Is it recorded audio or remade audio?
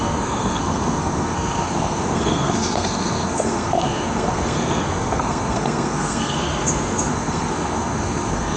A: remade